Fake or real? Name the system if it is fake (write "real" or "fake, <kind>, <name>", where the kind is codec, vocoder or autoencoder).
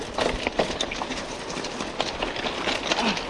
real